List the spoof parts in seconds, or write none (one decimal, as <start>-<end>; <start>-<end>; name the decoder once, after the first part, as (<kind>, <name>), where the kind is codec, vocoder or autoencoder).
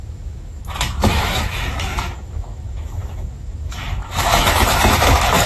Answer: 0.0-5.5 (autoencoder, DAC-VAE)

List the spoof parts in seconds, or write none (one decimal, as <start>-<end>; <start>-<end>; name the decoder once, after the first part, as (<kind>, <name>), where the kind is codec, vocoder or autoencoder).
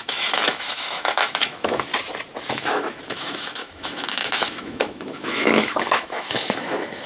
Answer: 0.0-1.9 (autoencoder, DAC-VAE); 2.5-7.1